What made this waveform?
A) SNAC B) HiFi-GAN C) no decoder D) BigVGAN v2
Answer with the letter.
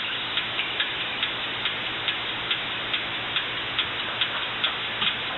C